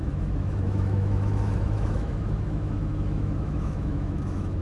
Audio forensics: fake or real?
fake